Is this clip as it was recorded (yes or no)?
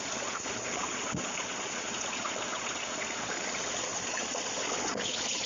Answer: no